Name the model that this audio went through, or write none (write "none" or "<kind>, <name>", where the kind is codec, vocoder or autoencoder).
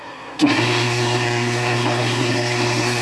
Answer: codec, SNAC